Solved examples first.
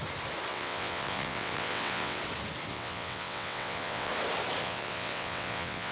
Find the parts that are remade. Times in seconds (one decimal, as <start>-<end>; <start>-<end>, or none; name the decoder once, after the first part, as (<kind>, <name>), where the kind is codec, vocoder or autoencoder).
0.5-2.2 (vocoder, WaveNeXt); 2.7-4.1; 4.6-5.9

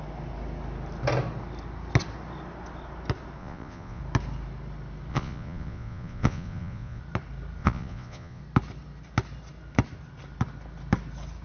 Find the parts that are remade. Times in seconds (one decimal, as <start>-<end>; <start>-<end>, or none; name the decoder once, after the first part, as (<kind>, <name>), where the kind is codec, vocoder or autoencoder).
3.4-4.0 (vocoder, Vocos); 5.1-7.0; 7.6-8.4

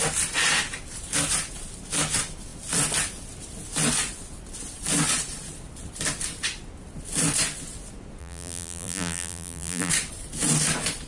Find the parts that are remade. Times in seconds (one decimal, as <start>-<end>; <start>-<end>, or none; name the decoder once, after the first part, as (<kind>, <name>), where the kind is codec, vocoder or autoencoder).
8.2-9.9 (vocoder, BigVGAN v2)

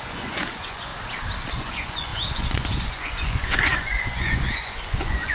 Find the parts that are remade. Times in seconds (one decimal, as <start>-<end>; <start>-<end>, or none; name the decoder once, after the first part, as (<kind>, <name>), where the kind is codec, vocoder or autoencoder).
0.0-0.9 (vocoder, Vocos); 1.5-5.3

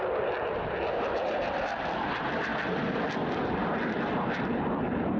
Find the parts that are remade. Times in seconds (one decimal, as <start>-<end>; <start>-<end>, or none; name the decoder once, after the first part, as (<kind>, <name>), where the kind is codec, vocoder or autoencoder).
none

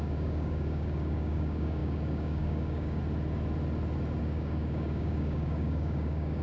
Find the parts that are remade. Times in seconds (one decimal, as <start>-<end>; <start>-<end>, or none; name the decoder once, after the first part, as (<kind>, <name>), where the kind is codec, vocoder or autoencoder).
0.0-3.0 (codec, DAC); 4.2-6.4

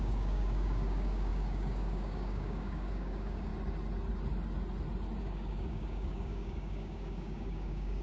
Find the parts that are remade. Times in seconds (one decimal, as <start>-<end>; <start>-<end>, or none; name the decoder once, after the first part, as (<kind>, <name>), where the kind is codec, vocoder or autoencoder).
0.0-3.5 (codec, DAC); 5.2-8.0